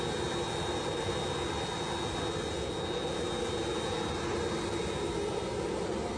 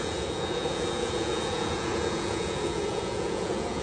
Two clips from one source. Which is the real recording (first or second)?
first